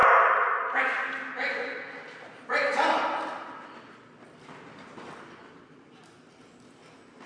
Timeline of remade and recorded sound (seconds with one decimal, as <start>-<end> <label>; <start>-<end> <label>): 0.0-7.3 recorded